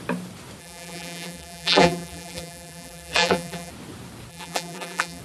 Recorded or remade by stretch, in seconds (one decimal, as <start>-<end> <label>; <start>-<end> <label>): 0.0-0.6 recorded; 0.6-3.7 remade; 3.7-4.3 recorded; 4.3-5.2 remade